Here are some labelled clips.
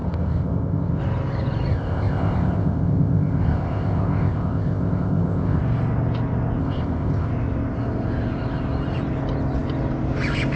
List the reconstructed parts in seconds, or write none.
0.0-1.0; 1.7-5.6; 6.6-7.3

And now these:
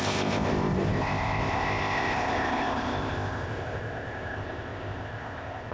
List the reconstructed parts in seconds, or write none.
0.0-5.7

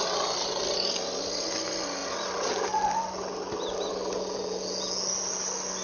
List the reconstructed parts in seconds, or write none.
none

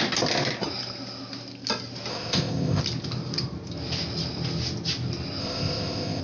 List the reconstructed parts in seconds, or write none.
2.1-2.8; 5.4-6.2

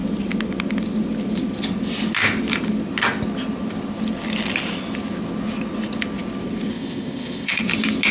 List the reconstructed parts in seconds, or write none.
6.7-7.6

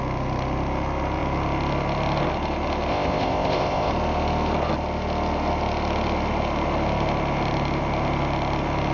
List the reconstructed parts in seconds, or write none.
2.9-3.9

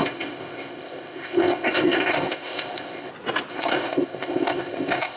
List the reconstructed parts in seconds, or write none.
0.0-3.1; 3.5-5.2

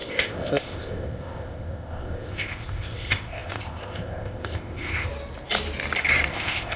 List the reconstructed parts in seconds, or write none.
0.0-5.1; 6.3-6.8